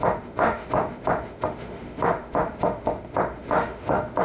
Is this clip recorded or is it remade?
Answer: remade